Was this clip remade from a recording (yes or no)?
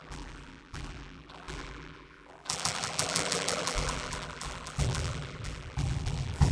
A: yes